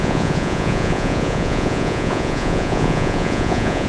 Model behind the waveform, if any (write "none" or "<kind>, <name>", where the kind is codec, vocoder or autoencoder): vocoder, Vocos